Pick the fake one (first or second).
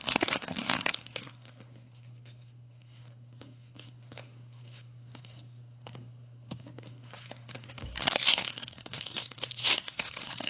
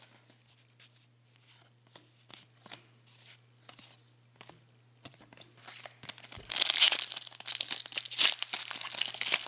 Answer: first